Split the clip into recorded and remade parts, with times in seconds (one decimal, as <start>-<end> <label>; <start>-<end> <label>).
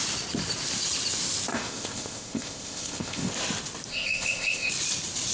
0.0-1.5 recorded; 1.5-3.3 remade; 3.3-3.9 recorded; 3.9-4.7 remade; 4.7-5.3 recorded